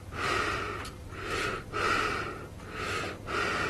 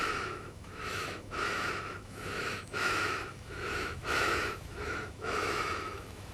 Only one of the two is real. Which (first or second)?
first